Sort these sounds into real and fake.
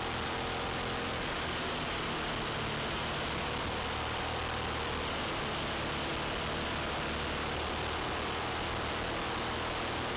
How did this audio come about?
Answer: real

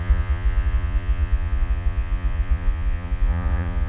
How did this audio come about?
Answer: fake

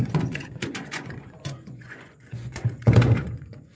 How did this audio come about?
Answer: fake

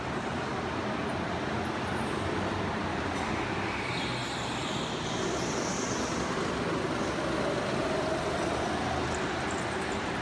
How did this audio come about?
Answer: real